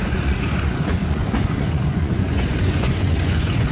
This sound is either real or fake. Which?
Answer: fake